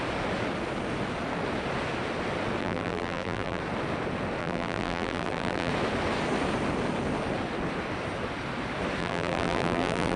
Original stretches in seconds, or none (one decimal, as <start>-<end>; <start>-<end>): 0.0-2.6; 3.6-4.4; 5.7-9.0